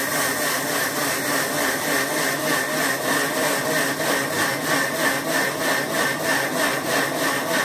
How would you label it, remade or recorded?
recorded